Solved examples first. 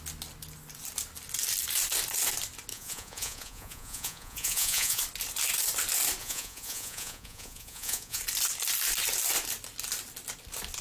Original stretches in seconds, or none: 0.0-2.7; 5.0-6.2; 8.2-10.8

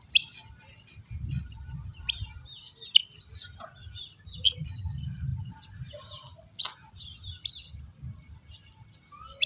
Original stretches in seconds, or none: 0.0-9.5